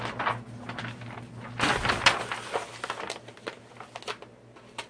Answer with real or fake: real